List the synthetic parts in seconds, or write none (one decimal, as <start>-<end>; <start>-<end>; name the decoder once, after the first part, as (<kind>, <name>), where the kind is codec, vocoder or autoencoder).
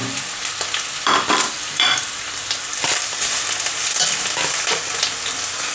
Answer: 0.0-2.8 (vocoder, BigVGAN v2)